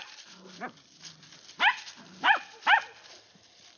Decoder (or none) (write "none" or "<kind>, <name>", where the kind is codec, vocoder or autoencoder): none